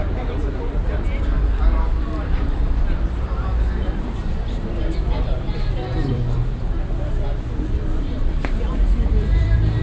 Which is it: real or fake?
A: fake